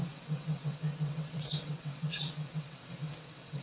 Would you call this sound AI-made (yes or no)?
yes